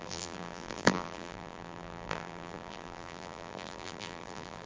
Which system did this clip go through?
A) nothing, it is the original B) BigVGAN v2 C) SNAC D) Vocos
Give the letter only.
B